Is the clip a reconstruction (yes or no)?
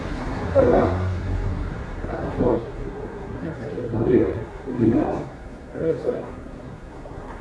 yes